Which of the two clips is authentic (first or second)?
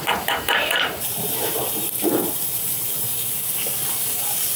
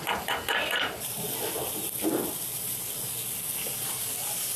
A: second